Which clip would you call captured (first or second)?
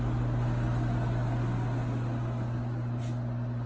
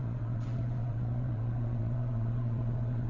first